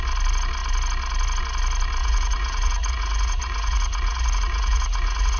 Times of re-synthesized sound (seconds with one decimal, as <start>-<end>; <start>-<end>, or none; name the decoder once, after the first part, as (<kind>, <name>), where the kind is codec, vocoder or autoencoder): 2.0-5.4 (vocoder, Vocos)